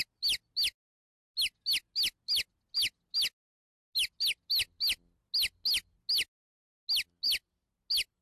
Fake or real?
real